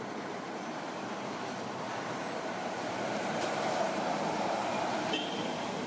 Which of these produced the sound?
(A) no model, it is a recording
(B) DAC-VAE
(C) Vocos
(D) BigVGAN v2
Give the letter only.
D